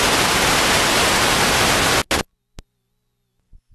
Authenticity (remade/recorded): recorded